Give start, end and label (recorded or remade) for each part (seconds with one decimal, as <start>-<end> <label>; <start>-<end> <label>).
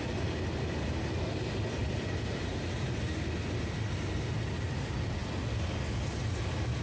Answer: 0.0-6.8 recorded